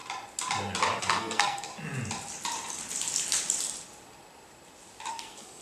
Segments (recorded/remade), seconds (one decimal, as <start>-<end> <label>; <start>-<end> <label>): 0.0-1.0 recorded; 1.0-1.7 remade; 1.7-5.1 recorded; 5.1-5.6 remade